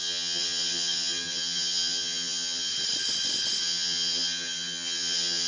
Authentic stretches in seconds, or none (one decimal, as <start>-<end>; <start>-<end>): 2.7-3.6